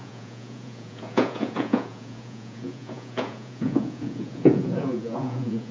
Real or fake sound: fake